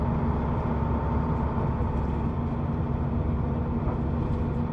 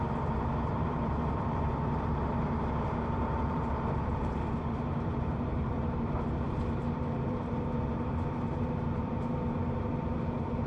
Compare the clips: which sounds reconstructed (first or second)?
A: second